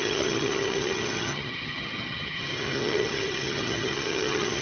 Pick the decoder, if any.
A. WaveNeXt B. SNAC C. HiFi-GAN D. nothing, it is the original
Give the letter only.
C